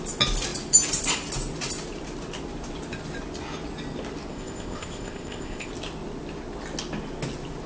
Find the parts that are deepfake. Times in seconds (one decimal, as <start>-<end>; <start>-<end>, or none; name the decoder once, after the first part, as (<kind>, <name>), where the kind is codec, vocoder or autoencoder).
4.3-5.7 (codec, ZipCodec)